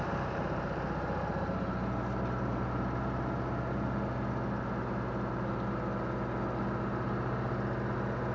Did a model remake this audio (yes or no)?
no